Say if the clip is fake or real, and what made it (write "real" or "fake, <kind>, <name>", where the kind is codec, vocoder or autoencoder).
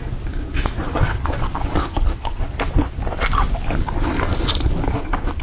real